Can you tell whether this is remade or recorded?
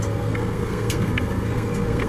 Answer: remade